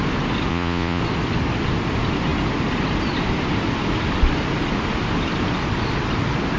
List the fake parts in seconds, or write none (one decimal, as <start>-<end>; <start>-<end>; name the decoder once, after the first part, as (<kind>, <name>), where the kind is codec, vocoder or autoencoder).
0.5-1.0 (vocoder, Vocos)